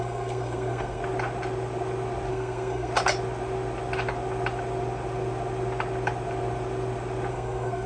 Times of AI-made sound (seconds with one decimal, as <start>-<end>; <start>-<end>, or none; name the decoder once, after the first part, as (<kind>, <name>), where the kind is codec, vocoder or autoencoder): 0.0-1.0 (codec, SNAC); 2.3-2.9; 7.3-7.9